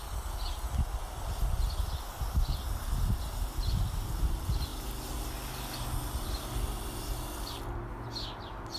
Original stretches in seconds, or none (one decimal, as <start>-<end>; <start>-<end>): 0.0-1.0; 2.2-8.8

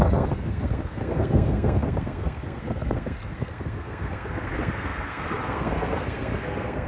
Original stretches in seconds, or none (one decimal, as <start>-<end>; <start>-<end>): none

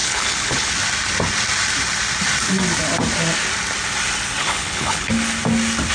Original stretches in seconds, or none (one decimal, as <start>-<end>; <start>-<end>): 0.7-4.4; 5.1-5.9

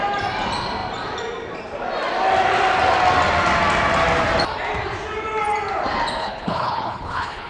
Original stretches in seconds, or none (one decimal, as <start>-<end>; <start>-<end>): 0.0-6.2

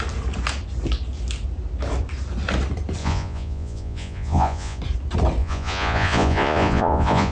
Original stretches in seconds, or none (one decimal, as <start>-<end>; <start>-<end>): 0.0-3.0; 4.8-5.4